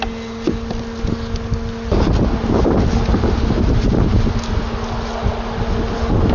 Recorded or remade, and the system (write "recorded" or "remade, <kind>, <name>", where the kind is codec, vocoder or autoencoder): recorded